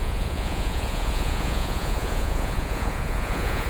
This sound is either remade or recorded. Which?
remade